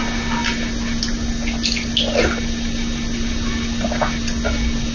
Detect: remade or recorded recorded